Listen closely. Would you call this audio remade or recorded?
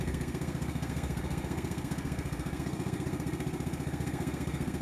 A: remade